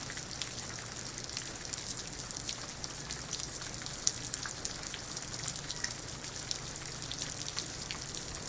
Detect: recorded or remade recorded